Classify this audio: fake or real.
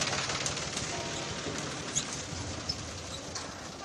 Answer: real